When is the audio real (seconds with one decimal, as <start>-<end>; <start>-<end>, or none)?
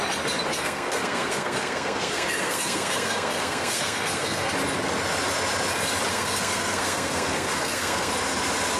0.0-0.5; 4.5-6.1; 8.1-8.8